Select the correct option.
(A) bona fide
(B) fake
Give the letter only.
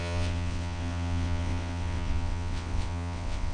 B